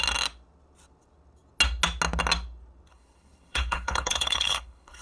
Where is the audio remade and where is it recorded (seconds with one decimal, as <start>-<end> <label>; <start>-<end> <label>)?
0.0-2.9 recorded; 2.9-5.0 remade